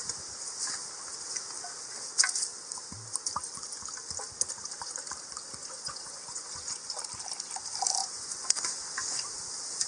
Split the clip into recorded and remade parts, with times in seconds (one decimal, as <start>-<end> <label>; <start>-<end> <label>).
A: 0.0-5.6 recorded; 5.6-6.9 remade; 6.9-8.0 recorded; 8.0-8.7 remade; 8.7-9.9 recorded